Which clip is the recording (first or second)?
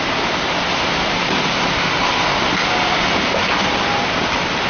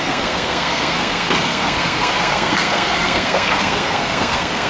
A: first